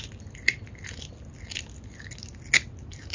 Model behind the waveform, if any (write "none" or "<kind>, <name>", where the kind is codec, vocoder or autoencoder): none